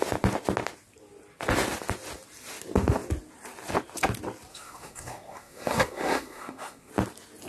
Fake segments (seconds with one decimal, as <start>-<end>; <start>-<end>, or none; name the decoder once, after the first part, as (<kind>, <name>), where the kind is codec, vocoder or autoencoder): 4.5-6.9 (codec, SNAC)